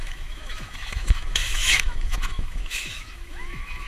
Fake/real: fake